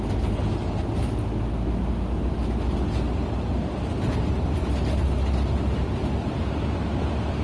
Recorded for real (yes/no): yes